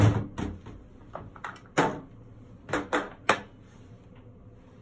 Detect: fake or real real